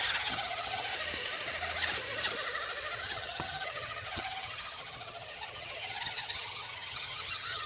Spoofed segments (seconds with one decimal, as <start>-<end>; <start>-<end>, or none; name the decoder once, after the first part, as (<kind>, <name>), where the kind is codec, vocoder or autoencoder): 0.0-0.9 (vocoder, HiFi-GAN); 3.0-7.7

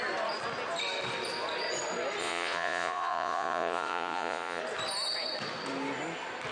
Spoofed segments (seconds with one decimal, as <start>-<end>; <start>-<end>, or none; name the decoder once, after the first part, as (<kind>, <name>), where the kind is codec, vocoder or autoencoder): 2.2-4.6 (vocoder, Vocos)

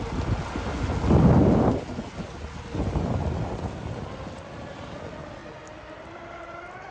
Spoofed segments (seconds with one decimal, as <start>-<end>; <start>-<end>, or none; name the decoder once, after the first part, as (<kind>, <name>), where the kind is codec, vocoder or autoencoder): none